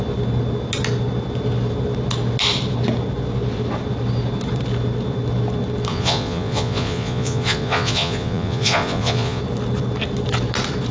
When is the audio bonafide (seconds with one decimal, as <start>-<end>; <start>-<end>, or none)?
0.0-5.9; 9.4-10.9